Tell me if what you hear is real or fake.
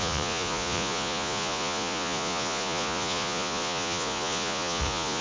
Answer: fake